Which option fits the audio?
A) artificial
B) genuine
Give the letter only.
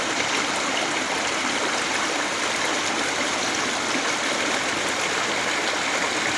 B